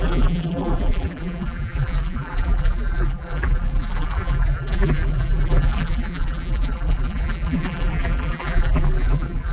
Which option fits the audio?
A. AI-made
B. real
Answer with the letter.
A